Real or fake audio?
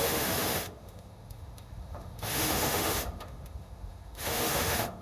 fake